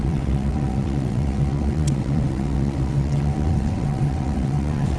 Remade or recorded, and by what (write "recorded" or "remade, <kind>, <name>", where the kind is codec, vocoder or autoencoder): remade, vocoder, WaveNeXt